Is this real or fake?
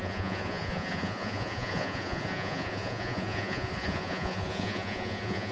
fake